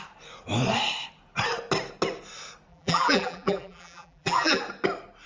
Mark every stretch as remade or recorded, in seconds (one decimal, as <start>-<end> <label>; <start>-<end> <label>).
0.0-2.7 recorded; 2.7-4.6 remade; 4.6-5.3 recorded